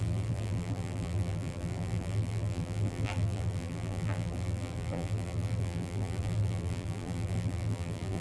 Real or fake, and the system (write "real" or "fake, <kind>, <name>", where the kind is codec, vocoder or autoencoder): fake, vocoder, BigVGAN v2